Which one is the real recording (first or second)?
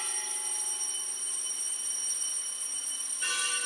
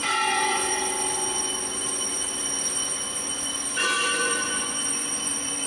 first